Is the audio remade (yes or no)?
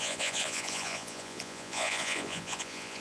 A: yes